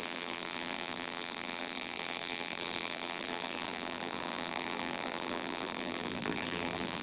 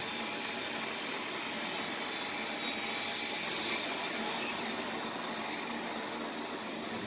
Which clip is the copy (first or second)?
first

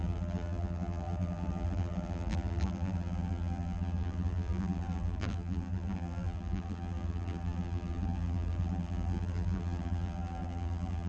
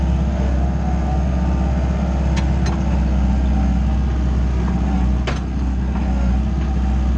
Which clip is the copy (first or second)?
first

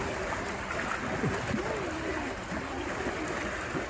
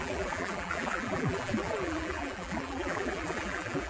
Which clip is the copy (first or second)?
second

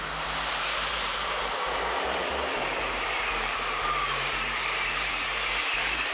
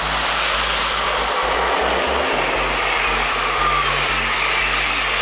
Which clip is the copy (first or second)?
first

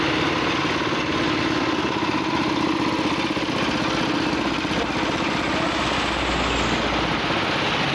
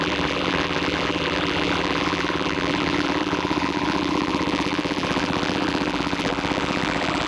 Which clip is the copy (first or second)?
second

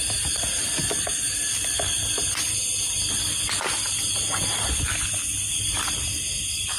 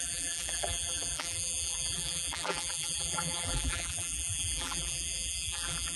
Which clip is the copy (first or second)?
second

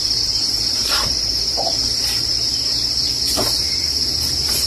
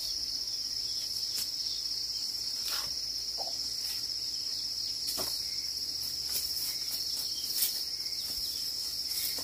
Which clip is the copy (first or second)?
first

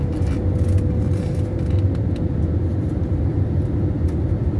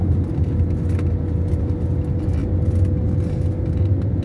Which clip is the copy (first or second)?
first